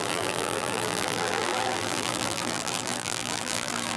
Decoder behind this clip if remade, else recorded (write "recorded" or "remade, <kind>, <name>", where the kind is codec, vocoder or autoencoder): remade, vocoder, BigVGAN v2